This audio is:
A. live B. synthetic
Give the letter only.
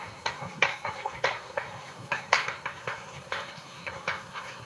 B